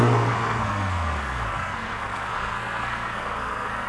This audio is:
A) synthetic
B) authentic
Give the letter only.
A